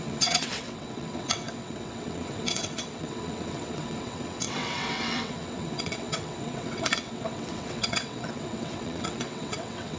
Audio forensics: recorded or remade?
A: remade